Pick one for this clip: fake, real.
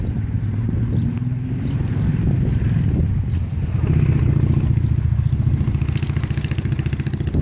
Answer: real